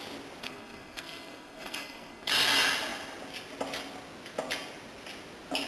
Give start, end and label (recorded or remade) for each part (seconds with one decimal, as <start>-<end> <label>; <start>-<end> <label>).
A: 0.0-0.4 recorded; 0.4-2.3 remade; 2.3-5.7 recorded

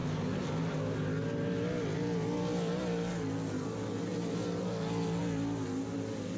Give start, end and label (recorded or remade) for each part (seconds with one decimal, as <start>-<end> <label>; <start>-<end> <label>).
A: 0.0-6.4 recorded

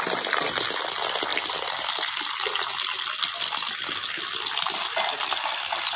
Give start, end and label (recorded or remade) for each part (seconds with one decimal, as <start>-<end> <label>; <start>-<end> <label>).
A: 0.0-6.0 recorded